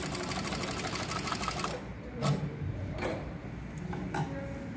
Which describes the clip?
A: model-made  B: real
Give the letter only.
B